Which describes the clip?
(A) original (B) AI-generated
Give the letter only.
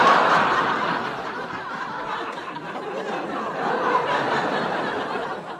A